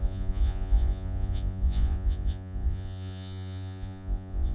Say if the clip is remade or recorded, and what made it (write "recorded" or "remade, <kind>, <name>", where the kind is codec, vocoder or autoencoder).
remade, vocoder, Vocos